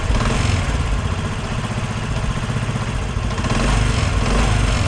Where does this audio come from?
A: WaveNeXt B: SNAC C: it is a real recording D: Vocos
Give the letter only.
C